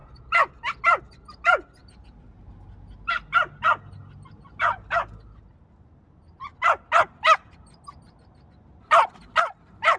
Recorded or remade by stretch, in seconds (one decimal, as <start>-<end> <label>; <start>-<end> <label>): 0.0-10.0 recorded